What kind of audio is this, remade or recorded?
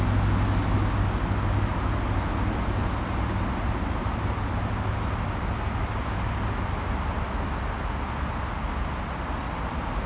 recorded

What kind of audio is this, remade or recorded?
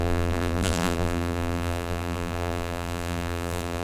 remade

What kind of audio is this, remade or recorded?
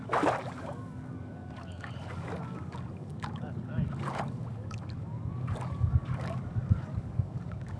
remade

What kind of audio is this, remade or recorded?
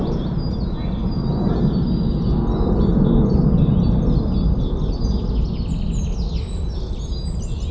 recorded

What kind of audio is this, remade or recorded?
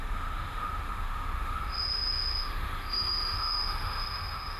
remade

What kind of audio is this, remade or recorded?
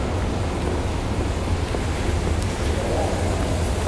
recorded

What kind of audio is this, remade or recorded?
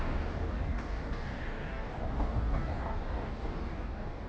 remade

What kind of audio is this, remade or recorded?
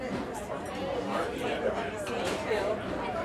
remade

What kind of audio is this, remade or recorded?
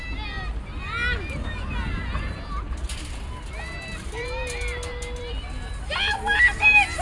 recorded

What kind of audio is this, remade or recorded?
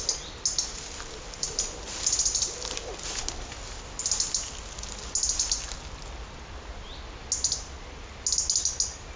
recorded